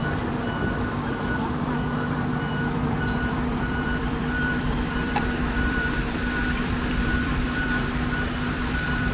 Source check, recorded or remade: remade